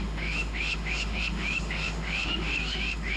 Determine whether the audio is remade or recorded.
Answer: remade